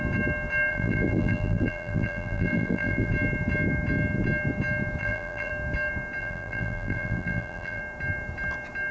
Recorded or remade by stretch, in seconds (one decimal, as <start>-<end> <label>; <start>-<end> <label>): 0.0-0.7 recorded; 0.7-3.1 remade; 3.1-5.0 recorded; 5.0-5.5 remade; 5.5-6.2 recorded; 6.2-7.8 remade; 7.8-8.9 recorded